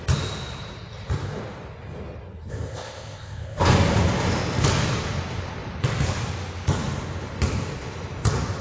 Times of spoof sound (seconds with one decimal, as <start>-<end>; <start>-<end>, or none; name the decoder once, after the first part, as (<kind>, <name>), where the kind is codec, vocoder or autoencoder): 2.5-3.6 (codec, ZipCodec)